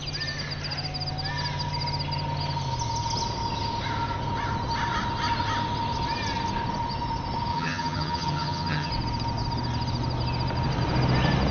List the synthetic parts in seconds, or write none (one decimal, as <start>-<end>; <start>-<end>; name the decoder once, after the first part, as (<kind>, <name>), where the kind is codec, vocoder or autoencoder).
7.5-8.9 (vocoder, HiFi-GAN)